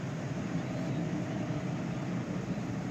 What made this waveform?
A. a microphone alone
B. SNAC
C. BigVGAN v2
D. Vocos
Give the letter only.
C